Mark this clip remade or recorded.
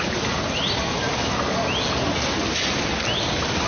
recorded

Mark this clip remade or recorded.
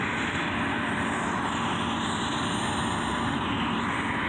recorded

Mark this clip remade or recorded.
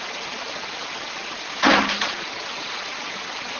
recorded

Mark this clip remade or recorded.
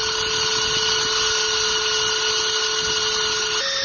recorded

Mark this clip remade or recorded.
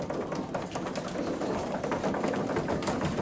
recorded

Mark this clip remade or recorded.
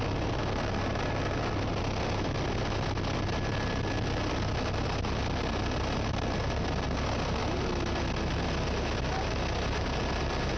recorded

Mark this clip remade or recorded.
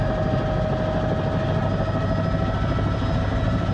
recorded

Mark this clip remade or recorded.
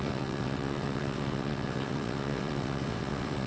remade